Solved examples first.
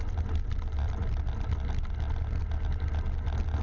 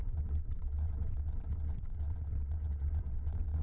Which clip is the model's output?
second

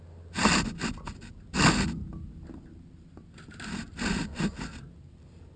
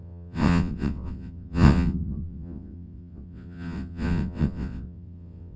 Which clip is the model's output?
second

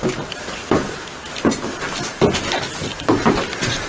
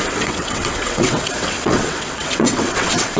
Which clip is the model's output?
second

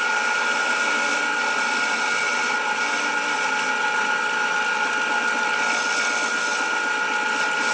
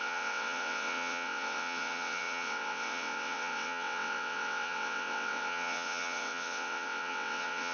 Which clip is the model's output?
second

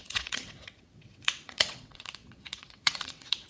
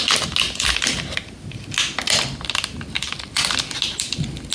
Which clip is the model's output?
first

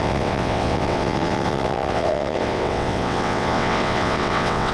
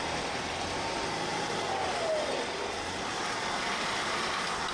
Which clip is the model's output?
first